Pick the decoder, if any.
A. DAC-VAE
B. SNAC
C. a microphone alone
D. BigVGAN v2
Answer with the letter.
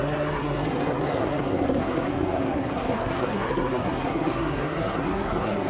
B